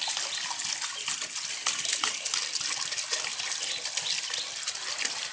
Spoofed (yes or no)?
no